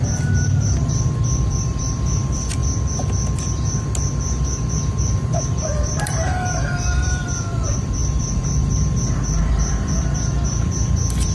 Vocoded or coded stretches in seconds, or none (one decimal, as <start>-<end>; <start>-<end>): 0.0-2.6; 5.5-11.3